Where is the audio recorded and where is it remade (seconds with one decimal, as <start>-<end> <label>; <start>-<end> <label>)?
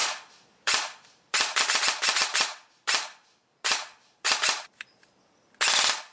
0.0-1.6 remade; 1.6-6.1 recorded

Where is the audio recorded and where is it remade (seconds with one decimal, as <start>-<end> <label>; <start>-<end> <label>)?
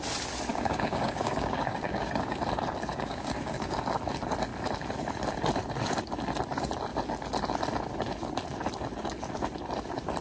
0.0-0.5 recorded; 0.5-2.4 remade; 2.4-2.9 recorded; 2.9-3.8 remade; 3.8-10.2 recorded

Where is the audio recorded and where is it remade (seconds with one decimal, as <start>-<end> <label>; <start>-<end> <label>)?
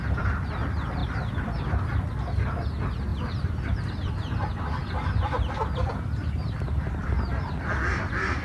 0.0-1.0 recorded; 1.0-1.6 remade; 1.6-3.1 recorded; 3.1-4.1 remade; 4.1-8.4 recorded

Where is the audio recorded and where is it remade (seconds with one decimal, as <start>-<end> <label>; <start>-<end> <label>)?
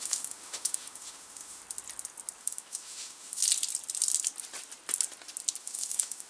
0.0-1.6 remade; 1.6-2.4 recorded; 2.4-3.4 remade; 3.4-5.6 recorded; 5.6-6.3 remade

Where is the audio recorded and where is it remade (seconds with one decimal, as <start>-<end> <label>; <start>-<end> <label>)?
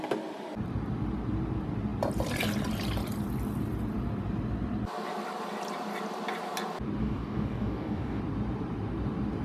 0.0-7.0 recorded; 7.0-8.2 remade; 8.2-9.4 recorded